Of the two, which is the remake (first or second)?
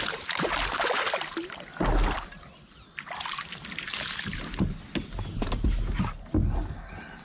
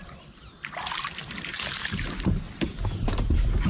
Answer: second